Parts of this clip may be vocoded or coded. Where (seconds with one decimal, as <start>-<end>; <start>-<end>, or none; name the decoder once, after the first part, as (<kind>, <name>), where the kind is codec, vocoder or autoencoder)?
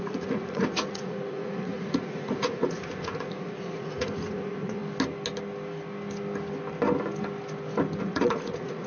0.0-4.8 (vocoder, Vocos); 8.0-8.9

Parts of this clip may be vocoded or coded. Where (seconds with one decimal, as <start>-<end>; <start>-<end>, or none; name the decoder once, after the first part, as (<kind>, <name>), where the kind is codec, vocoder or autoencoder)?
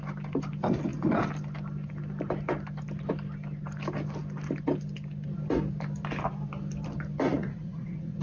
7.3-8.2 (vocoder, Vocos)